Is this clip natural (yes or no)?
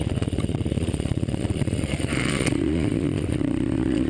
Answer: no